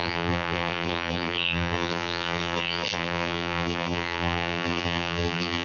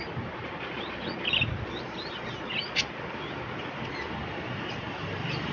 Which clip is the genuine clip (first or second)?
second